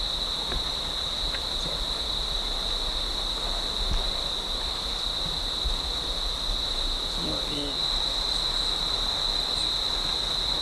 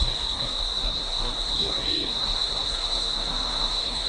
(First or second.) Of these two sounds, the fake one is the second